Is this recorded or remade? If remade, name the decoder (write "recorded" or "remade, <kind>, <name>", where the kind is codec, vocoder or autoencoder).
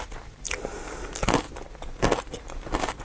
recorded